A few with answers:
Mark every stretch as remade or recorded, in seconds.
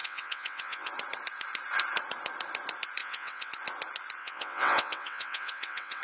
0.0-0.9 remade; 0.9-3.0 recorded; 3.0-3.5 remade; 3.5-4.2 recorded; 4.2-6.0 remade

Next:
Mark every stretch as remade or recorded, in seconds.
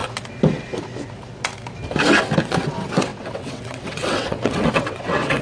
0.0-2.4 recorded; 2.4-5.4 remade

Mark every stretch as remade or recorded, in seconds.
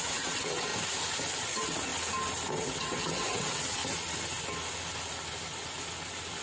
0.0-0.7 remade; 0.7-1.4 recorded; 1.4-1.9 remade; 1.9-2.5 recorded; 2.5-3.8 remade; 3.8-6.4 recorded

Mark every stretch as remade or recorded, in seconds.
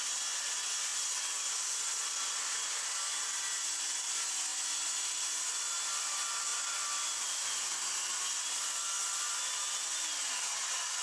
0.0-11.0 recorded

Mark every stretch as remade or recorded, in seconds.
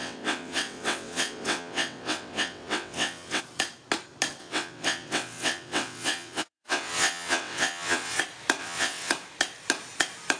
0.0-3.4 remade; 3.4-4.4 recorded; 4.4-8.2 remade; 8.2-8.6 recorded; 8.6-9.1 remade; 9.1-10.4 recorded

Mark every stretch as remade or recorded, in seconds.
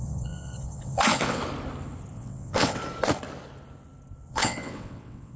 0.0-1.4 remade; 1.4-2.1 recorded; 2.1-2.8 remade; 2.8-4.3 recorded; 4.3-5.4 remade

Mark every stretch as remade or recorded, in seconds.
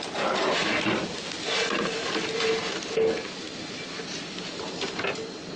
0.0-5.6 recorded